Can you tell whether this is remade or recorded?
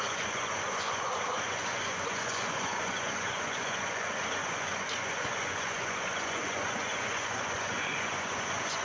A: remade